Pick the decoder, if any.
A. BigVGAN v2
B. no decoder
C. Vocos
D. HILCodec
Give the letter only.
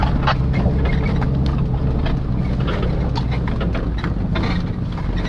B